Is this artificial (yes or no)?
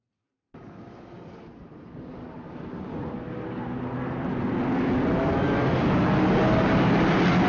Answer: no